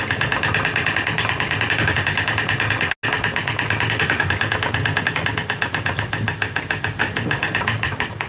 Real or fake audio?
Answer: real